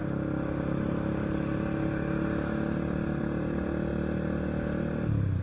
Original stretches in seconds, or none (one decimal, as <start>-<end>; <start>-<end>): 0.0-5.4